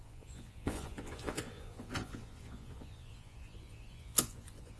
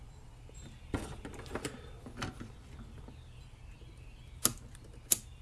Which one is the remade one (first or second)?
first